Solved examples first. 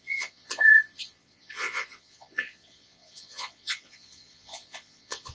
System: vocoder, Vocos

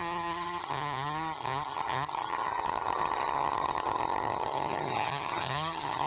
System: vocoder, HiFi-GAN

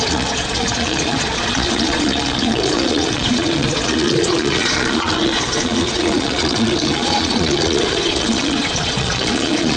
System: vocoder, Vocos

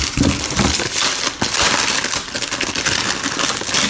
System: none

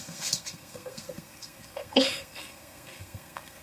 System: codec, SNAC